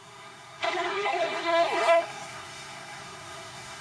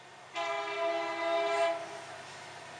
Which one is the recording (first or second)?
second